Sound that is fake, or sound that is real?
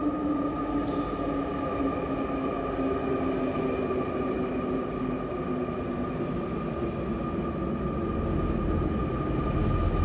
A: real